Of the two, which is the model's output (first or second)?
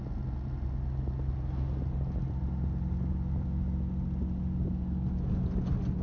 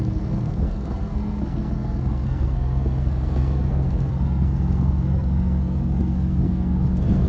second